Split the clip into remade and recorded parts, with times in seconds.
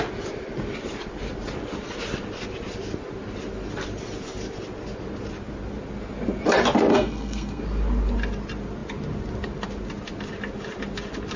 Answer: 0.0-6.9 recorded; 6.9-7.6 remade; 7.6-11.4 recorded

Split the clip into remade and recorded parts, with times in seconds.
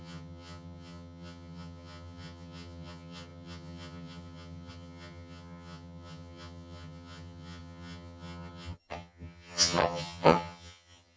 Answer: 0.0-11.2 remade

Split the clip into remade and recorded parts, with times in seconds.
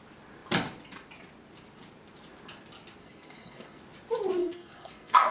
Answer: 0.0-3.0 recorded; 3.0-3.8 remade; 3.8-4.4 recorded; 4.4-5.3 remade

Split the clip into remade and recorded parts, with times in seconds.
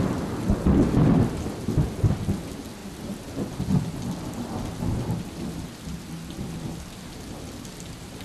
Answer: 0.0-8.2 recorded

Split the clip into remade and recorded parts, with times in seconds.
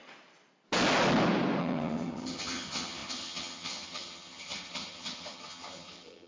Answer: 0.0-1.6 recorded; 1.6-6.3 remade